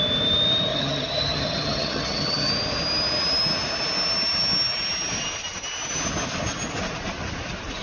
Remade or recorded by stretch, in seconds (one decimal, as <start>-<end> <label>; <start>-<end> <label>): 0.0-0.7 recorded; 0.7-2.5 remade; 2.5-7.8 recorded